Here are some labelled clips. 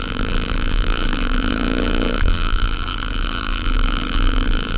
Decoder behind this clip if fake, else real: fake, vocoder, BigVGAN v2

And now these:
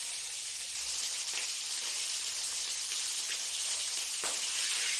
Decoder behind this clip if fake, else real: fake, vocoder, BigVGAN v2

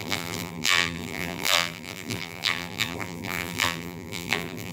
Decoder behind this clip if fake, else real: fake, vocoder, BigVGAN v2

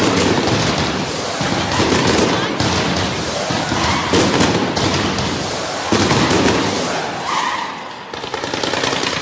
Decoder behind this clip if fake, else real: real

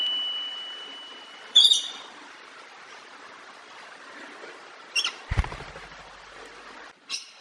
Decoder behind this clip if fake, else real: fake, vocoder, BigVGAN v2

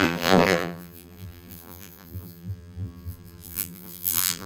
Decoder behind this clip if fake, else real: fake, vocoder, BigVGAN v2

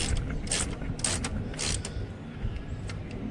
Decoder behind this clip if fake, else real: real